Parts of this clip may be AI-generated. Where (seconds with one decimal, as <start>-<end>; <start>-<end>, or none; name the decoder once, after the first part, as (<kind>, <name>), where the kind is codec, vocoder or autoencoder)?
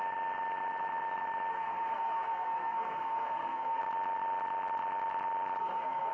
1.5-3.8 (codec, SNAC); 5.6-6.1